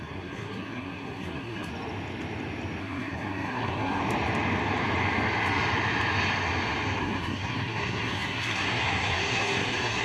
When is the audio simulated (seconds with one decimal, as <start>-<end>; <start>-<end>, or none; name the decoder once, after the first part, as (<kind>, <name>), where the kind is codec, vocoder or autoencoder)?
0.0-1.7 (codec, SNAC); 2.8-4.0; 7.0-10.0